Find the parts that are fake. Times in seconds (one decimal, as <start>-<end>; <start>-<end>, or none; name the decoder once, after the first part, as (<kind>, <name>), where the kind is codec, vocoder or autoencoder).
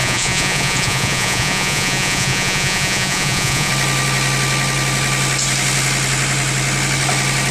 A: 0.0-3.7 (vocoder, Vocos)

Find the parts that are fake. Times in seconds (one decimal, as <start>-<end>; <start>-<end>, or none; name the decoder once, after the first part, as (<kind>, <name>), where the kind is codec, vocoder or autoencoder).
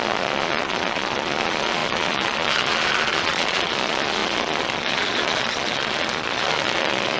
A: 0.0-7.2 (vocoder, Vocos)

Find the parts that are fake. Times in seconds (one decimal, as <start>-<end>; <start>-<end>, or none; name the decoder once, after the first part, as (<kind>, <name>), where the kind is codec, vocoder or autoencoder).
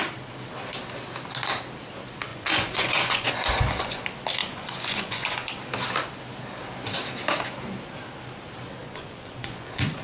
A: 2.3-4.0 (vocoder, Vocos); 4.4-5.5; 8.8-10.0